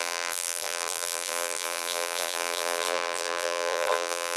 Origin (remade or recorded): remade